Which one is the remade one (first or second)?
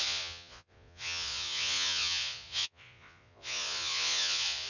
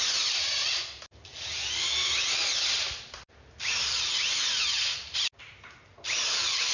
first